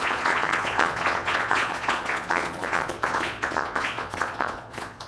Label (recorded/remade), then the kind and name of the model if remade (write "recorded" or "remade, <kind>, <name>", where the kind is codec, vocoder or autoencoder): remade, vocoder, Vocos